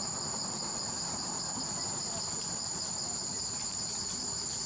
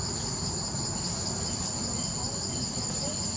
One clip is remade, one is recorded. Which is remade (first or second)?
first